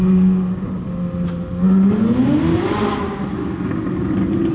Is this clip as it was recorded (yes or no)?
yes